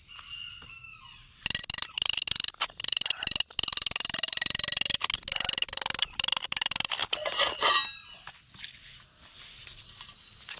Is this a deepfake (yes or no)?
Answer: no